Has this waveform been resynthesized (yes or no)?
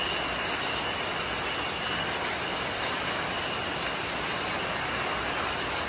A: no